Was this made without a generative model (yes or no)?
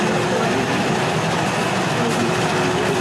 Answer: yes